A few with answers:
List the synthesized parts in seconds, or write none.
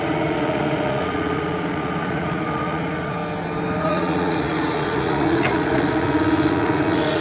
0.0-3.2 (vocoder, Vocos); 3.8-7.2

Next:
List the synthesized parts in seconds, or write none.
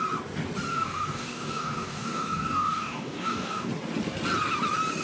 0.7-3.7 (codec, DAC)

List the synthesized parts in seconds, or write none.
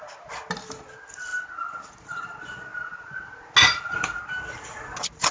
none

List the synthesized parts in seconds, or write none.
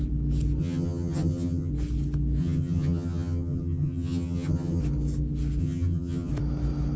0.6-1.7 (vocoder, HiFi-GAN); 2.4-4.8; 5.6-6.3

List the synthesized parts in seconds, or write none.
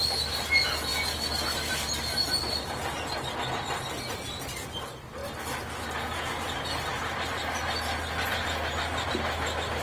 none